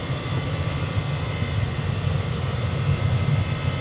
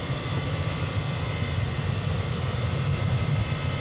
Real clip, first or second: first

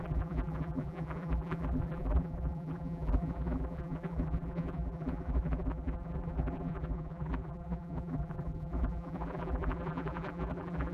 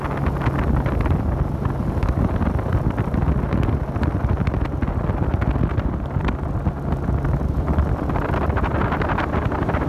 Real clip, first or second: second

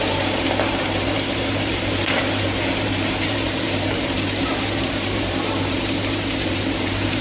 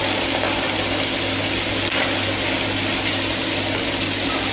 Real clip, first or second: second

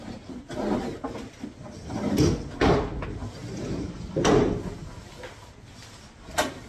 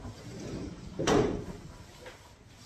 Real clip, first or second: first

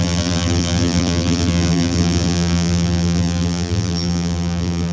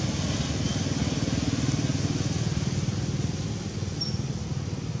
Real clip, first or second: second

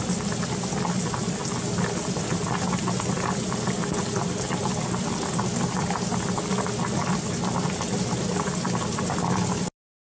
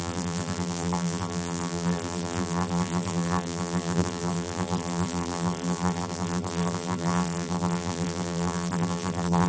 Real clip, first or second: first